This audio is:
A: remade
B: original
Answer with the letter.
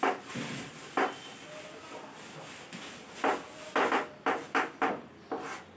B